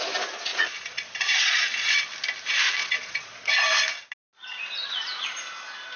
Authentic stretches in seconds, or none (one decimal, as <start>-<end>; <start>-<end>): 0.0-0.5; 2.0-2.8; 3.5-6.0